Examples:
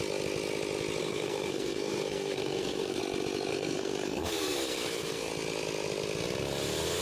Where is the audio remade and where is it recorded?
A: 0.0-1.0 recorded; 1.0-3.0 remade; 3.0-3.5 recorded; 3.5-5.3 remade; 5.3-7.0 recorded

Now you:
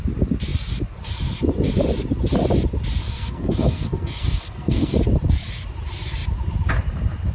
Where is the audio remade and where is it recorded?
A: 0.0-3.0 recorded; 3.0-4.9 remade; 4.9-7.3 recorded

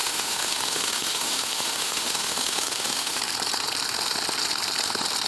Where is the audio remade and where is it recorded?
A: 0.0-3.2 remade; 3.2-5.3 recorded

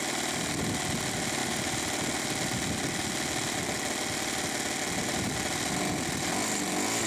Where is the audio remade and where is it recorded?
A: 0.0-7.1 recorded

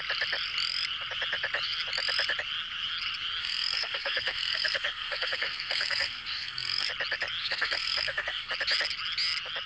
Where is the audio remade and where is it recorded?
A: 0.0-3.4 recorded; 3.4-6.9 remade; 6.9-7.4 recorded; 7.4-8.5 remade; 8.5-9.7 recorded